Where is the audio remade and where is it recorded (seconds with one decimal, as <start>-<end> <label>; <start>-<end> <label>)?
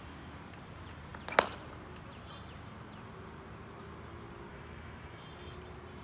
0.0-4.5 recorded; 4.5-5.2 remade; 5.2-6.0 recorded